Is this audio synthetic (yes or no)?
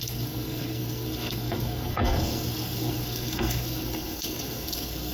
yes